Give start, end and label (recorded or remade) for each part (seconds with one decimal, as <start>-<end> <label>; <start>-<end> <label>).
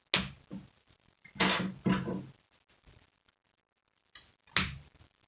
0.0-0.5 recorded; 0.5-1.2 remade; 1.2-5.3 recorded